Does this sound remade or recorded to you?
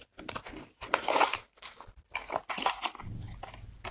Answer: recorded